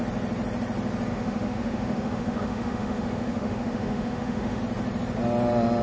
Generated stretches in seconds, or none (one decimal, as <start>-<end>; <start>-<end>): 1.1-4.6